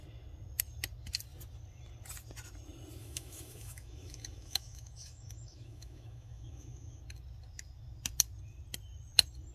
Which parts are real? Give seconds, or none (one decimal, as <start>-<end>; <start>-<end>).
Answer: 0.0-3.0; 7.0-9.5